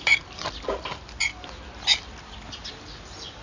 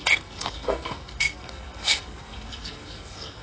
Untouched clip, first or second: first